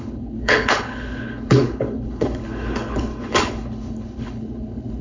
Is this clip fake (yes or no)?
yes